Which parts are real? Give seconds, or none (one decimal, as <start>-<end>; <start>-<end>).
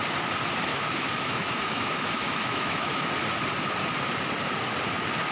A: 0.0-0.7; 3.1-5.3